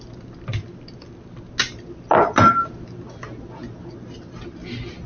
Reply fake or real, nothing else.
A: real